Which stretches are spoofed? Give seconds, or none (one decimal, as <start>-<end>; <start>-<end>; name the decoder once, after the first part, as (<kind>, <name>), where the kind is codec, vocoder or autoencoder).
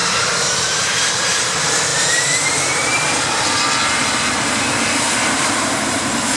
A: 0.0-6.4 (vocoder, BigVGAN v2)